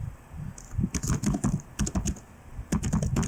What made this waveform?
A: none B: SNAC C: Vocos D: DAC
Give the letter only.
A